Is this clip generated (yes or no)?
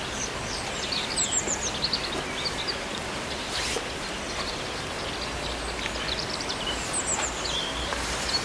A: no